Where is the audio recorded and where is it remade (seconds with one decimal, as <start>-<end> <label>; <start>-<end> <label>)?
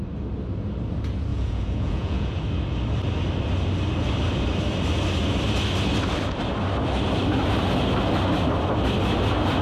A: 0.0-1.3 recorded; 1.3-2.4 remade; 2.4-9.6 recorded